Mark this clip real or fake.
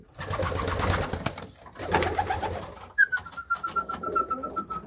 real